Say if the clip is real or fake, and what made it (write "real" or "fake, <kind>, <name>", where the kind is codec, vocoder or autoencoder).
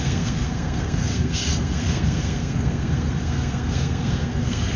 fake, codec, SNAC